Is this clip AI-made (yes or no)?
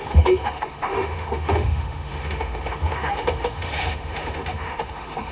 yes